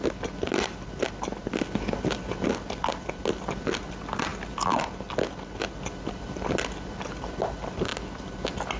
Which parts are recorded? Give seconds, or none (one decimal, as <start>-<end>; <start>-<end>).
0.0-8.8